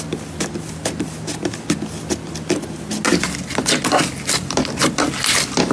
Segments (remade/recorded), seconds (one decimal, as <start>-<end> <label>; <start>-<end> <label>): 0.0-5.7 recorded